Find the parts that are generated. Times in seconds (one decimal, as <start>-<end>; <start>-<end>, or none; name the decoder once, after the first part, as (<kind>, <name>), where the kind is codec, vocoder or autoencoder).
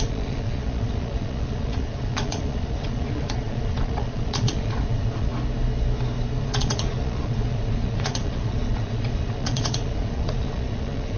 0.0-5.3 (vocoder, Vocos); 6.4-11.2